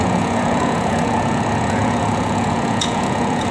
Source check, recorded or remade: remade